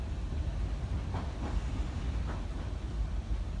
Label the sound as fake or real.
real